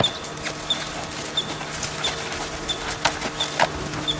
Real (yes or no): yes